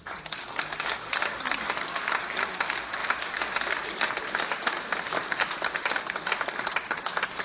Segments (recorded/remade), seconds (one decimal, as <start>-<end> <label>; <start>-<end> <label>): 0.0-7.4 recorded